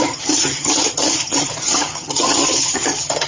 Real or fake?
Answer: fake